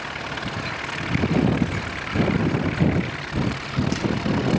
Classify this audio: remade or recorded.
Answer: recorded